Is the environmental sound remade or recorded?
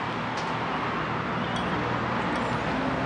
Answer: recorded